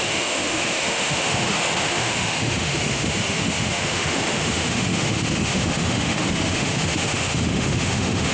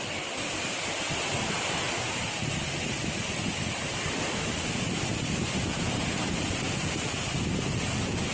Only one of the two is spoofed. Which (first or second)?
first